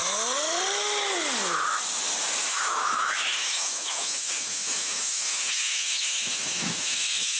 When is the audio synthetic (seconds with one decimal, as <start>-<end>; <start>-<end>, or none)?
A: 2.5-7.4